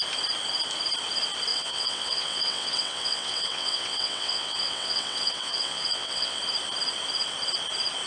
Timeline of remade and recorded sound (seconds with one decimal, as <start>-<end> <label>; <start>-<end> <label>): 0.0-1.5 recorded; 1.5-6.4 remade; 6.4-8.1 recorded